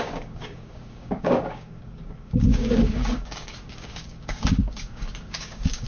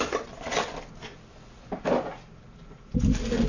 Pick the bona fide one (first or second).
second